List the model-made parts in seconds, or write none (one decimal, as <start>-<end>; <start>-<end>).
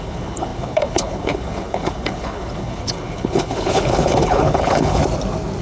0.0-5.0